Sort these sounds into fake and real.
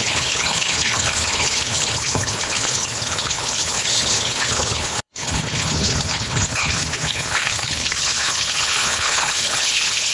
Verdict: fake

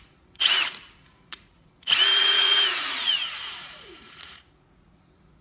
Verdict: fake